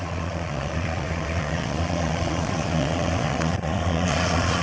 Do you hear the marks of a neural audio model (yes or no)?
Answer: yes